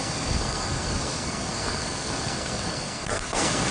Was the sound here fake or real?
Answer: fake